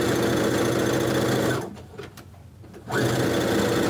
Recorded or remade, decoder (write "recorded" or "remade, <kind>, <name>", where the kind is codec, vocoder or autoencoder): recorded